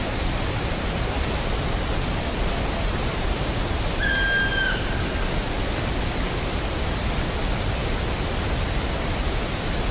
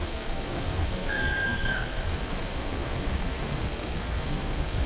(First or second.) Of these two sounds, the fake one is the second